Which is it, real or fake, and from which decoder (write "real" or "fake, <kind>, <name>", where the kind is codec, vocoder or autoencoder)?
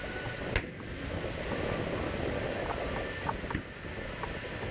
real